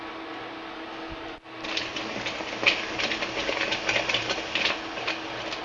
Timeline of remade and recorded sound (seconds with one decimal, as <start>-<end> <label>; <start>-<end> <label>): 0.0-5.6 recorded